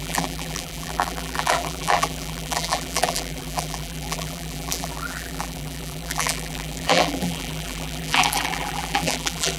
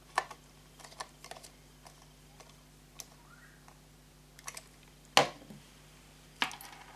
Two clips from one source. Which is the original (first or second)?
second